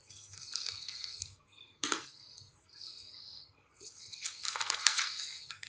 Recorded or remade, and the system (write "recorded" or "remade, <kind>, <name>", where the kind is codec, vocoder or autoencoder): remade, codec, SNAC